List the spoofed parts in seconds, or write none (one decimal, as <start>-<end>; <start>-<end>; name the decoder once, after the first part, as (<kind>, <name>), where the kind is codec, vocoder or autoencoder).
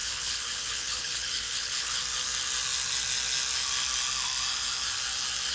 0.0-2.0 (codec, HILCodec)